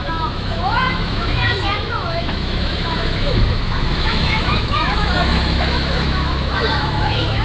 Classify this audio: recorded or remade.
remade